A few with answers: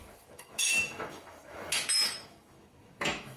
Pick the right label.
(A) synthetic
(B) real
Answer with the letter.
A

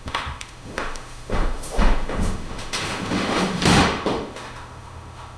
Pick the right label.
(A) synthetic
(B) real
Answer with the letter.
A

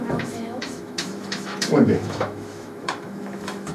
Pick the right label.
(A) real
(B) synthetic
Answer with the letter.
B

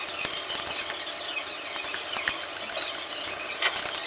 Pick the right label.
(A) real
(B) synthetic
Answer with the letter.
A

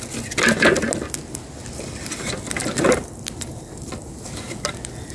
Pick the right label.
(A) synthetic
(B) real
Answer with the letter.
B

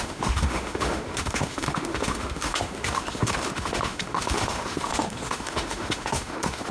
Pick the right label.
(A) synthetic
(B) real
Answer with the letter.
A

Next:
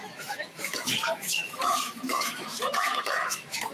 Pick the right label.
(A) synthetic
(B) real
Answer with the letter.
A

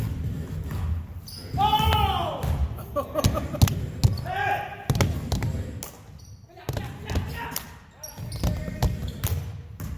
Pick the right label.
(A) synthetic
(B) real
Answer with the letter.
B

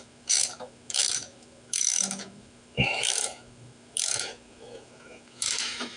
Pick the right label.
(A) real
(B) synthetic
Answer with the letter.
B